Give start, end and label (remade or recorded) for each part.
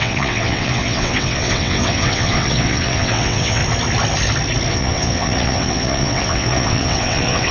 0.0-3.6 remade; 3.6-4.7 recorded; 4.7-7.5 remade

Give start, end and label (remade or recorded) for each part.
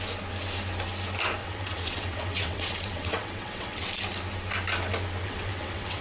0.0-1.4 recorded; 1.4-3.9 remade; 3.9-5.2 recorded; 5.2-6.0 remade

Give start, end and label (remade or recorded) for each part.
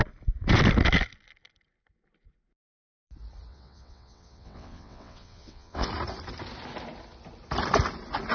0.0-3.5 recorded; 3.5-5.9 remade; 5.9-8.3 recorded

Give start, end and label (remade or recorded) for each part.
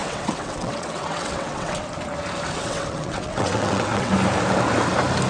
0.0-1.8 remade; 1.8-2.6 recorded; 2.6-4.1 remade; 4.1-5.3 recorded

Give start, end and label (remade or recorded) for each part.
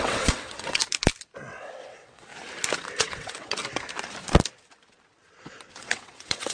0.0-0.8 remade; 0.8-1.6 recorded; 1.6-2.3 remade; 2.3-3.0 recorded; 3.0-3.6 remade; 3.6-5.8 recorded; 5.8-6.5 remade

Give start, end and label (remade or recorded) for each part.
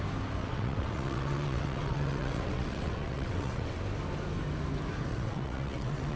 0.0-0.4 recorded; 0.4-3.8 remade; 3.8-5.1 recorded; 5.1-6.2 remade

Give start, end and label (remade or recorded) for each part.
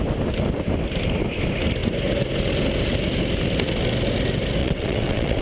0.0-4.6 recorded; 4.6-5.4 remade